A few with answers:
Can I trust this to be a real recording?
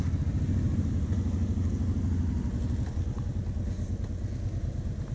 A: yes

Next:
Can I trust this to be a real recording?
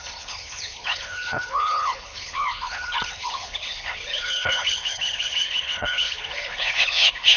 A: no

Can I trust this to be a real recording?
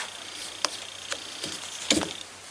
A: yes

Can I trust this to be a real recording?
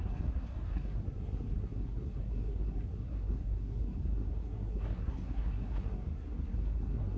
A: no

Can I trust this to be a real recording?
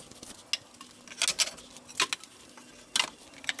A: yes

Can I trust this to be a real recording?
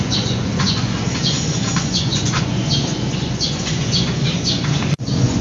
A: no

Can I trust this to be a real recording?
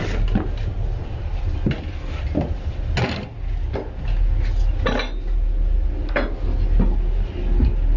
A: yes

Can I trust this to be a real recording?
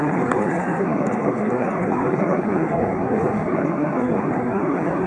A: no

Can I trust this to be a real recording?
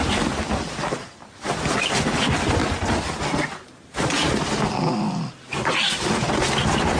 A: yes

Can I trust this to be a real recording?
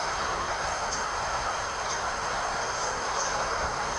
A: no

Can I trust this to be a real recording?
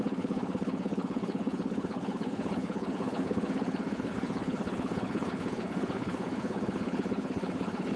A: no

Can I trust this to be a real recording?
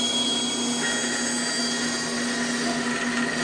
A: yes